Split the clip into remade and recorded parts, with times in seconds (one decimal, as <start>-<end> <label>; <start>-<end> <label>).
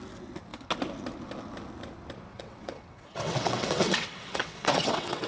0.0-2.3 recorded; 2.3-5.3 remade